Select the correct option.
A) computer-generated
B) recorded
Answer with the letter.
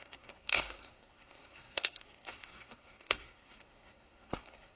A